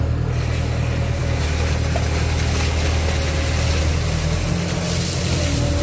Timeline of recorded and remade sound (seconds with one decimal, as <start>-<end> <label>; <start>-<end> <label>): 0.0-5.8 recorded